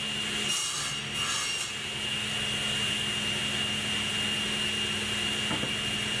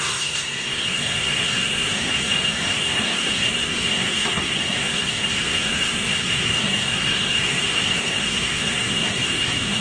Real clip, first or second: first